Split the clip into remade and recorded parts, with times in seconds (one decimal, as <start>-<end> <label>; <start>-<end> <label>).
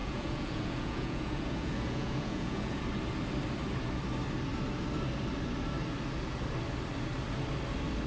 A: 0.0-2.8 remade; 2.8-8.1 recorded